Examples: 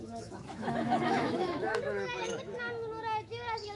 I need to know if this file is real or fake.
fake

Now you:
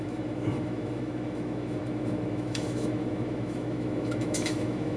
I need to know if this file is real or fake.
fake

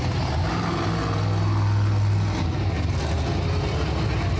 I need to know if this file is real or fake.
real